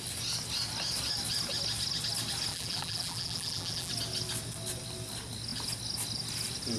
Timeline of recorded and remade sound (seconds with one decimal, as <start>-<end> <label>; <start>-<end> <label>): 0.0-2.5 recorded; 2.5-3.9 remade; 3.9-6.8 recorded